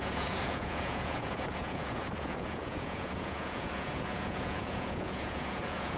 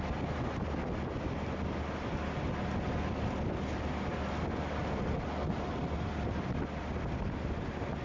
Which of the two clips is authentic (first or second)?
second